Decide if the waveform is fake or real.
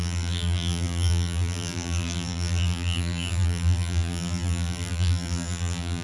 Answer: fake